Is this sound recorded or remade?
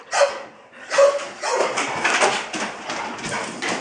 recorded